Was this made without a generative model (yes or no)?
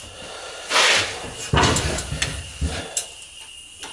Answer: yes